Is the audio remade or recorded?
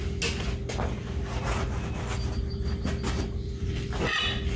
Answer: recorded